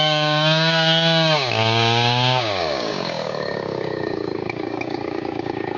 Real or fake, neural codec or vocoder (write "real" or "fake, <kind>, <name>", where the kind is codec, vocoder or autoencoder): fake, codec, DAC